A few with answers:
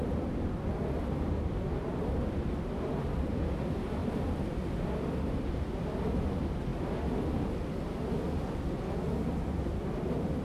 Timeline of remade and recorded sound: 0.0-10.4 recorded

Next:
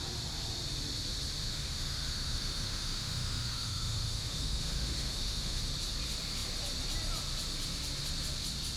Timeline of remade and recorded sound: 0.0-1.4 recorded; 1.4-5.6 remade; 5.6-8.8 recorded

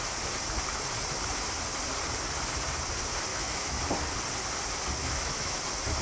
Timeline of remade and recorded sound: 0.0-3.3 recorded; 3.3-3.8 remade; 3.8-5.0 recorded; 5.0-5.6 remade; 5.6-6.0 recorded

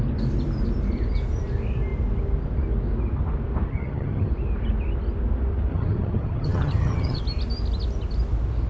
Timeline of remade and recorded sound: 0.0-3.7 recorded; 3.7-4.3 remade; 4.3-5.7 recorded; 5.7-7.2 remade; 7.2-8.7 recorded

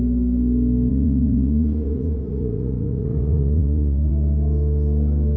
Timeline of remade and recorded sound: 0.0-0.9 recorded; 0.9-4.1 remade; 4.1-5.4 recorded

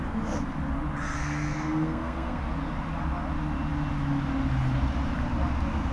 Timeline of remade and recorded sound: 0.0-1.1 recorded; 1.1-2.4 remade; 2.4-5.9 recorded

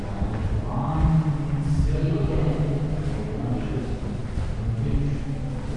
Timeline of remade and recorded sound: 0.0-5.8 recorded

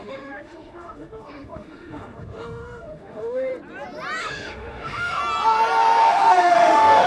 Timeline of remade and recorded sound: 0.0-3.5 remade; 3.5-4.2 recorded; 4.2-5.2 remade; 5.2-6.0 recorded; 6.0-7.1 remade